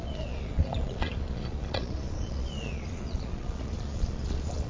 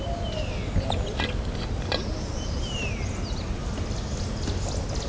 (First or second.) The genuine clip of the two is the second